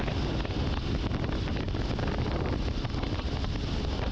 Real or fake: real